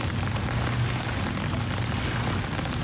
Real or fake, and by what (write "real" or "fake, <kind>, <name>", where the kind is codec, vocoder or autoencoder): real